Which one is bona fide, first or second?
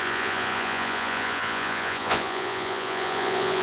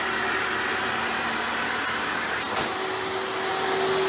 second